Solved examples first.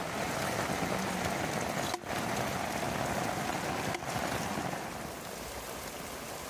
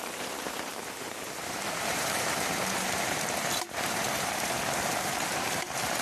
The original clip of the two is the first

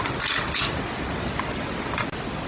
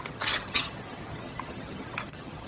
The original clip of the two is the first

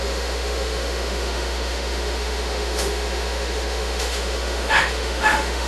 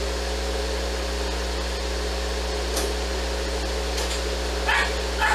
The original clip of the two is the second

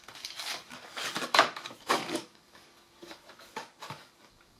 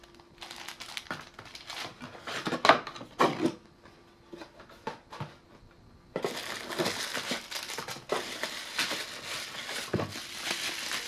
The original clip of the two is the second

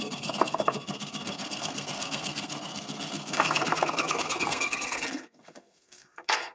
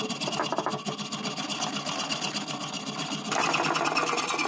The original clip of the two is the second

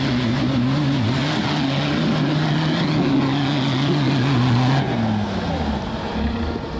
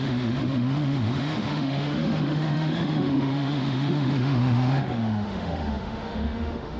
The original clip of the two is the first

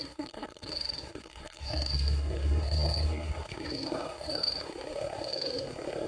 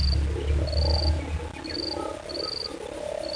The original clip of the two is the second